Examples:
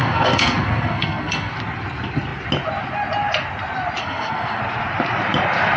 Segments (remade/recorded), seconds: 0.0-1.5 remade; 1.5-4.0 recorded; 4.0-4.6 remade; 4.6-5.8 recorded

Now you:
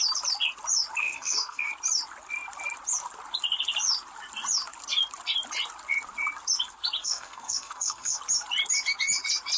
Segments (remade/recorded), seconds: 0.0-1.0 recorded; 1.0-1.7 remade; 1.7-7.0 recorded; 7.0-8.2 remade; 8.2-9.6 recorded